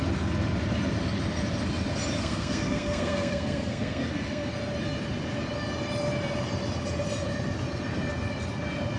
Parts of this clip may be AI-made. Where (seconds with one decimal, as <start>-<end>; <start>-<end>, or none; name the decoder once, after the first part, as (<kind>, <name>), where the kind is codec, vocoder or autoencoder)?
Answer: 2.2-4.5 (codec, SNAC)